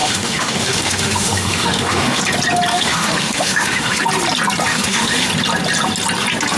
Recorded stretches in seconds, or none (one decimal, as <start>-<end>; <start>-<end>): 2.2-2.7; 4.0-4.7; 5.3-6.6